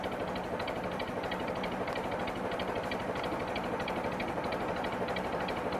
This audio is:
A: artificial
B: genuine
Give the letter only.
B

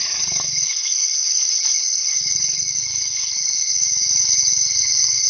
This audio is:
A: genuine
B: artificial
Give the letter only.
B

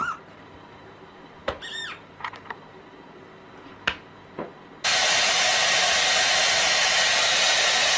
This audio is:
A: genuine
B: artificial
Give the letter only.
B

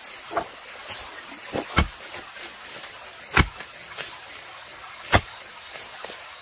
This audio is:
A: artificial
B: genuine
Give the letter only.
B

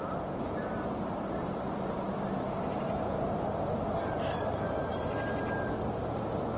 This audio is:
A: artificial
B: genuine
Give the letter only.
B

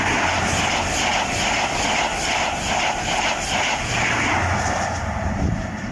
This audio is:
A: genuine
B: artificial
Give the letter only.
A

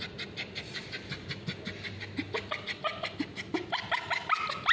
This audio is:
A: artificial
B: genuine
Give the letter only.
B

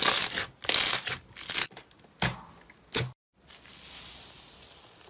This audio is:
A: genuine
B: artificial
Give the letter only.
A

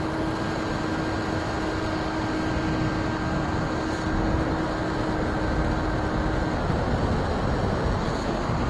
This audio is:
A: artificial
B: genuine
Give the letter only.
B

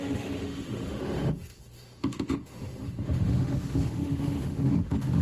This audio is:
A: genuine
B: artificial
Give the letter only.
B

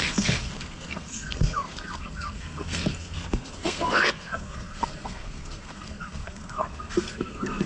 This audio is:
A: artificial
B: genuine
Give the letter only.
A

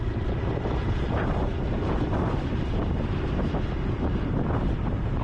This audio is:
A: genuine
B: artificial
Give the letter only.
A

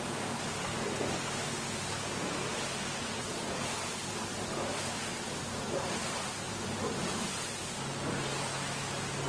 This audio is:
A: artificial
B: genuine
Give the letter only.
B